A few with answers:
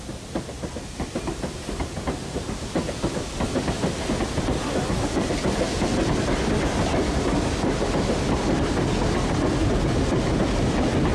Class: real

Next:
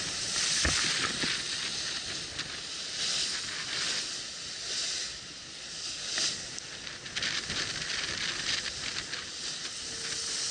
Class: real